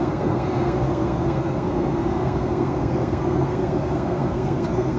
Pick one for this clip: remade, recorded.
remade